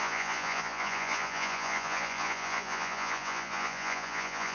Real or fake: fake